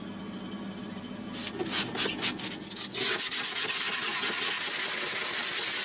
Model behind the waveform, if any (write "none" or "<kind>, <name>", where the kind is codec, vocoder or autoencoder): none